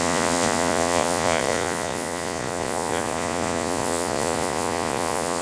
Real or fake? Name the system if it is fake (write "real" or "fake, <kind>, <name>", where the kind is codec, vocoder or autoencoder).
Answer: fake, vocoder, Vocos